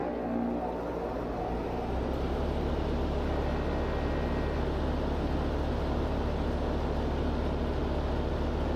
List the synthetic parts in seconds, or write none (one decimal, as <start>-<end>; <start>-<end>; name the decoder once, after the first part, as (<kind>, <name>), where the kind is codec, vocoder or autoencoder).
none